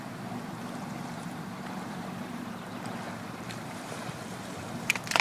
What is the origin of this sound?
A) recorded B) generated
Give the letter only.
B